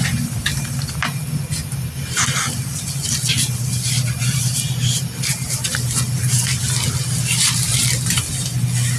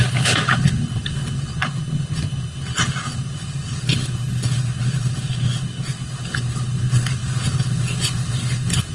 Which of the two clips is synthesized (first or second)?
second